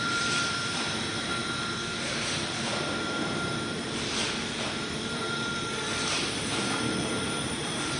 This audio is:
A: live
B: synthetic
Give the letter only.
B